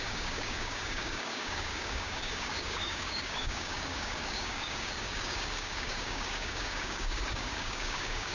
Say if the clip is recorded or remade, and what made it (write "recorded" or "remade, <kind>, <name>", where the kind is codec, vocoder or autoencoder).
remade, codec, DAC